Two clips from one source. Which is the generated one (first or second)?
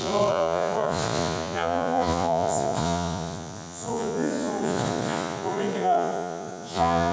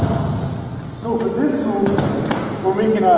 first